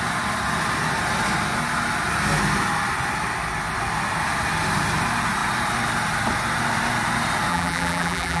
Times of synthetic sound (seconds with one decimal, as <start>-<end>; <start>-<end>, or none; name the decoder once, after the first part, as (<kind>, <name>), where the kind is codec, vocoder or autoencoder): 7.5-8.4 (vocoder, BigVGAN v2)